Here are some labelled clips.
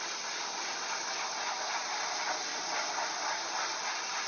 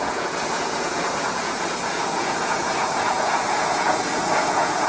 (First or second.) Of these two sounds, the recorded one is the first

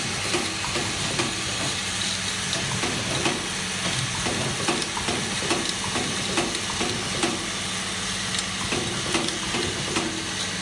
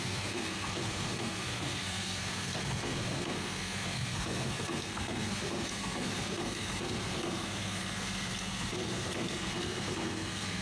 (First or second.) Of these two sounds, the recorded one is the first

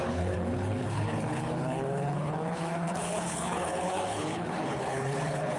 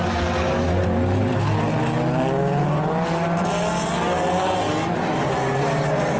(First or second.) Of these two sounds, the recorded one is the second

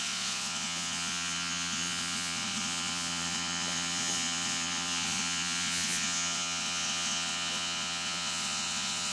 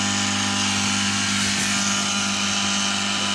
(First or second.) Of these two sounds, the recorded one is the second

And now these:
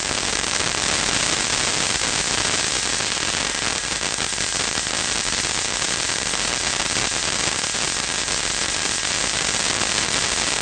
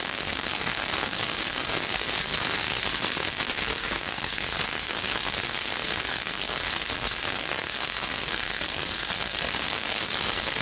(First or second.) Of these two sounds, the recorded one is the first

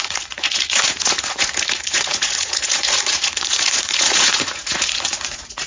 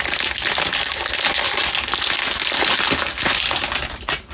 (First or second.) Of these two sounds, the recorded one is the second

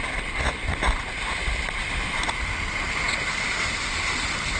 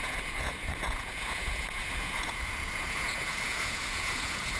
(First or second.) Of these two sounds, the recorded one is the first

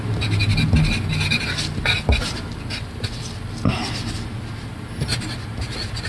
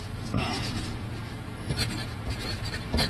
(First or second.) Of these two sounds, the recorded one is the first